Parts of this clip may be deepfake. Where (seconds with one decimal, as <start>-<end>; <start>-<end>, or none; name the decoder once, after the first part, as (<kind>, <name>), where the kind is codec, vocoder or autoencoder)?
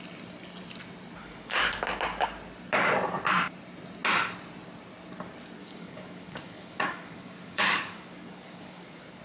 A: 1.2-1.8 (codec, DAC); 5.6-9.2